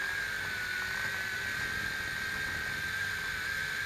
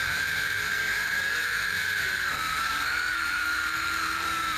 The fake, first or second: second